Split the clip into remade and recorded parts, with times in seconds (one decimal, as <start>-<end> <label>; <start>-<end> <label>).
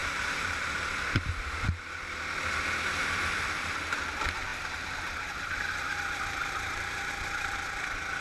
0.0-0.8 remade; 0.8-4.5 recorded; 4.5-5.3 remade; 5.3-6.4 recorded; 6.4-7.1 remade; 7.1-8.2 recorded